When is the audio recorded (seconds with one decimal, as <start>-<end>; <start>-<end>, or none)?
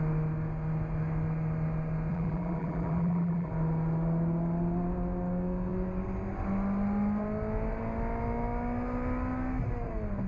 0.0-2.1; 3.5-10.3